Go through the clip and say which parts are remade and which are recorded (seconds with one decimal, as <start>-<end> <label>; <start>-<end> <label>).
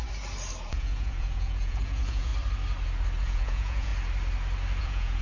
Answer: 0.0-0.7 recorded; 0.7-2.3 remade; 2.3-3.2 recorded; 3.2-3.9 remade; 3.9-4.8 recorded; 4.8-5.2 remade